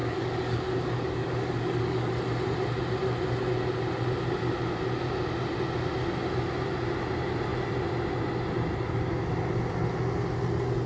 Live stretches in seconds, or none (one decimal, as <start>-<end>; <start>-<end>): 2.1-10.9